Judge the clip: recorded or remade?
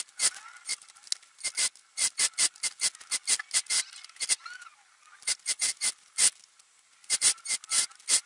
recorded